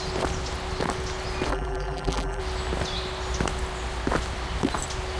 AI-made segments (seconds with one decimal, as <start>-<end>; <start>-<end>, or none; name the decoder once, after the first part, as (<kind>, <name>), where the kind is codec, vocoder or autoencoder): 1.5-2.4 (vocoder, BigVGAN v2)

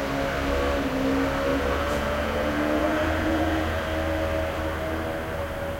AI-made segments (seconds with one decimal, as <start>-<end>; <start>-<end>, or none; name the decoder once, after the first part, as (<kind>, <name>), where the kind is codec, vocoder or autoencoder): 1.5-3.8 (vocoder, Vocos)

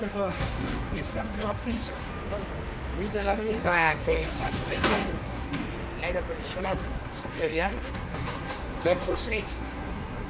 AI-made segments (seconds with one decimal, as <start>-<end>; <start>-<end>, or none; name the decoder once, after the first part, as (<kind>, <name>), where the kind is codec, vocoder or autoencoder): 0.0-2.1 (codec, SNAC); 3.1-5.6; 6.6-10.3

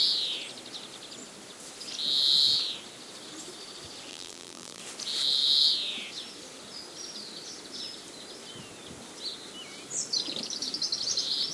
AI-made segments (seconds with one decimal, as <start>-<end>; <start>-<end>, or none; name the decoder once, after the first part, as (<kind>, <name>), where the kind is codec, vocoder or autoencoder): 4.1-4.8 (vocoder, BigVGAN v2)